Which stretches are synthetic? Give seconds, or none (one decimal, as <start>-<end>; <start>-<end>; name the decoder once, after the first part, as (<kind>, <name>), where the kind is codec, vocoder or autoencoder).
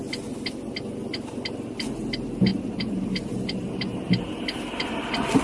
none